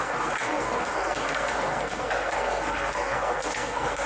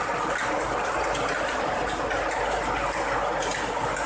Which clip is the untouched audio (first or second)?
second